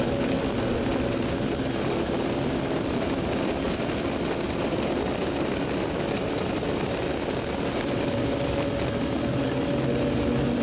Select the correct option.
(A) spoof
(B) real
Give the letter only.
B